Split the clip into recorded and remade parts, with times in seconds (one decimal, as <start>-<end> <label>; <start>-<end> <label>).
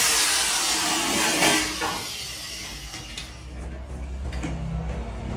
0.0-5.4 recorded